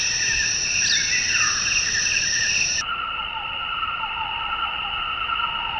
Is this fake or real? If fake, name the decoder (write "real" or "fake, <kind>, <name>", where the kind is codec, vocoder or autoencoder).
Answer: fake, vocoder, BigVGAN v2